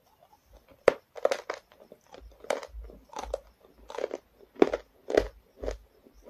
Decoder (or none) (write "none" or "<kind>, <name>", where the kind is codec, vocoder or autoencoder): none